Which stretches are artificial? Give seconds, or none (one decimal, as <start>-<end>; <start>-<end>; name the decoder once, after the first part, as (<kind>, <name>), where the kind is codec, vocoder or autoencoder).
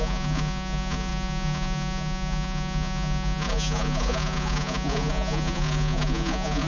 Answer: 0.0-6.7 (vocoder, Vocos)